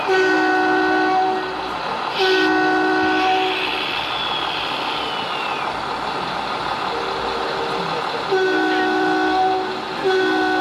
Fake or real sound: real